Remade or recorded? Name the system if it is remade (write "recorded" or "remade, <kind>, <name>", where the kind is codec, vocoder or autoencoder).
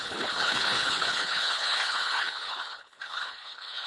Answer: remade, codec, HILCodec